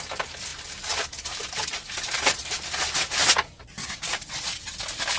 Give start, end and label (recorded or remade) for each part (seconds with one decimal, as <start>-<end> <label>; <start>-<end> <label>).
0.0-3.8 recorded; 3.8-4.3 remade; 4.3-5.2 recorded